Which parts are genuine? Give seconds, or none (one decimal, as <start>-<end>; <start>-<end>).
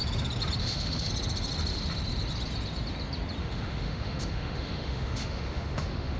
0.0-0.6; 1.1-3.4